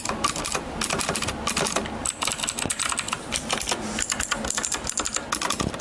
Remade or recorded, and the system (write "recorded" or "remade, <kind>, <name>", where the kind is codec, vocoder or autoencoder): recorded